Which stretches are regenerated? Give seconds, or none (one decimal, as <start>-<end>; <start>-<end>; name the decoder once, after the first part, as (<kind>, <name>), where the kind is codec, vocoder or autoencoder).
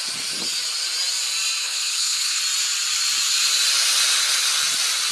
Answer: 1.6-2.4 (codec, HILCodec)